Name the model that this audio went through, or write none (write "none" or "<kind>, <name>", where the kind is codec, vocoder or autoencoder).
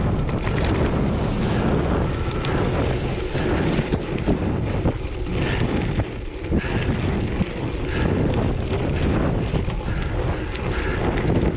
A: none